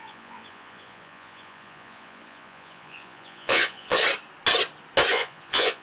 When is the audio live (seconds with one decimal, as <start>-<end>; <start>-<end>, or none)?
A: 4.0-5.1